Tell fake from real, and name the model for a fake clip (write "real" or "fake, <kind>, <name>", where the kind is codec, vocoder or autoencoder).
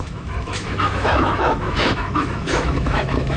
fake, autoencoder, DAC-VAE